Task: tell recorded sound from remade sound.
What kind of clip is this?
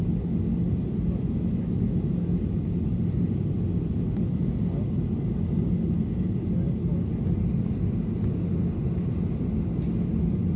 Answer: recorded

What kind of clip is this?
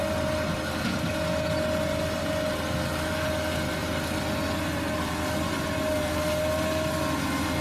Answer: recorded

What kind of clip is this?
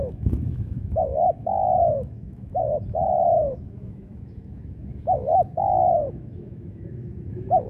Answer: remade